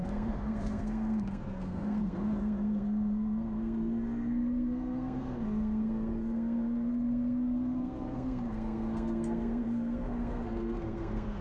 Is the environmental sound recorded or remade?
remade